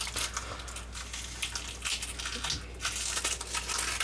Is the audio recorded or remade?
recorded